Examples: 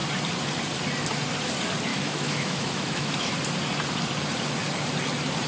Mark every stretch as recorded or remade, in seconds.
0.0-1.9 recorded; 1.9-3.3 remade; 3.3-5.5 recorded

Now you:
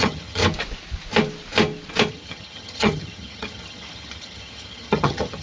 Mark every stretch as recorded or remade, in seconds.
0.0-0.4 remade; 0.4-2.1 recorded; 2.1-5.4 remade

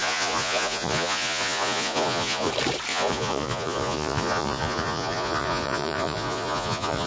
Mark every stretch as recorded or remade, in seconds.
0.0-2.5 remade; 2.5-2.9 recorded; 2.9-7.1 remade

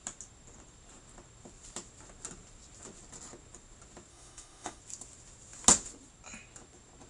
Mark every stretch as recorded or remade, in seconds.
0.0-4.1 recorded; 4.1-4.8 remade; 4.8-7.1 recorded